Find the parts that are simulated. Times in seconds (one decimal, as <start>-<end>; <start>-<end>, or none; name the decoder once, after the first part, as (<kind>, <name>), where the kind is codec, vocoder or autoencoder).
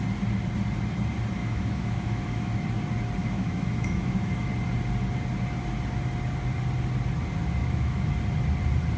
1.4-2.5 (autoencoder, DAC-VAE); 3.2-4.5; 7.6-8.1